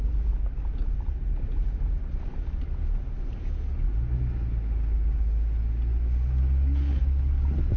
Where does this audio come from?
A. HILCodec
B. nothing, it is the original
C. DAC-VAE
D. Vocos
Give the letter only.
B